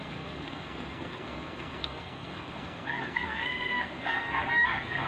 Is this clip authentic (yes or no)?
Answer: no